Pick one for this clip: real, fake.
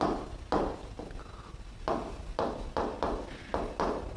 real